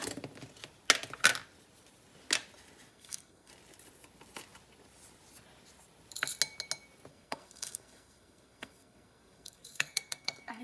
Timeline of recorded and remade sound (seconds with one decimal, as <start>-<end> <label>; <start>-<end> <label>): 0.0-2.9 recorded; 2.9-3.5 remade; 3.5-7.1 recorded; 7.1-10.6 remade